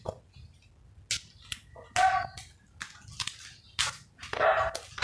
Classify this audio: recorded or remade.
recorded